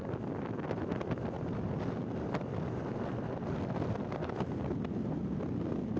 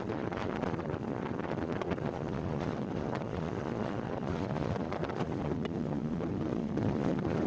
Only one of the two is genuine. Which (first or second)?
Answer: first